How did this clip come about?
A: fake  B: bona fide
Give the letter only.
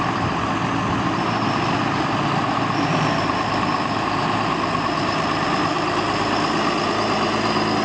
B